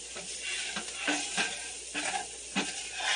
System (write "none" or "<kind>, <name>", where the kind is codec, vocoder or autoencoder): none